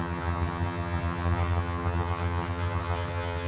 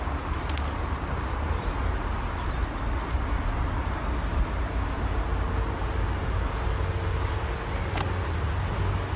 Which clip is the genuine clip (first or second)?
second